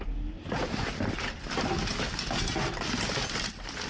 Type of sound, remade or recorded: recorded